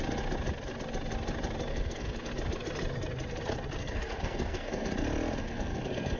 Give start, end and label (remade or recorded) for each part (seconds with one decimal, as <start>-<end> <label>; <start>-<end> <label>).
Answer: 0.0-1.7 recorded; 1.7-2.3 remade; 2.3-3.8 recorded; 3.8-4.9 remade; 4.9-5.4 recorded; 5.4-6.2 remade